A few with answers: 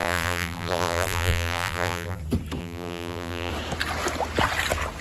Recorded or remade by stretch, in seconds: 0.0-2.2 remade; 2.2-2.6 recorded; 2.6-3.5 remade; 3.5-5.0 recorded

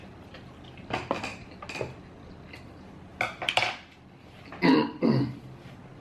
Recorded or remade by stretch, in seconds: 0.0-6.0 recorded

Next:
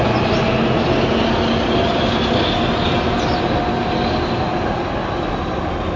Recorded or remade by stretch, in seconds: 0.0-6.0 recorded

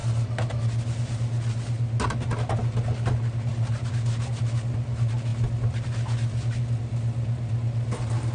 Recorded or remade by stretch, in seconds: 0.0-8.3 recorded

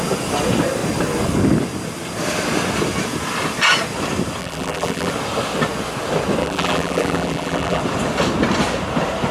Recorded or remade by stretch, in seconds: 0.0-4.4 recorded; 4.4-5.1 remade; 5.1-6.4 recorded; 6.4-7.8 remade; 7.8-9.3 recorded

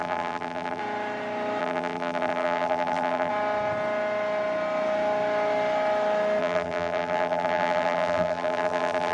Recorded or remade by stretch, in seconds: 0.0-0.8 remade; 0.8-1.6 recorded; 1.6-3.3 remade; 3.3-6.4 recorded; 6.4-9.1 remade

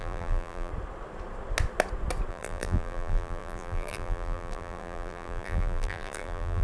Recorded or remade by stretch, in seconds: 0.0-0.7 remade; 0.7-2.3 recorded; 2.3-6.6 remade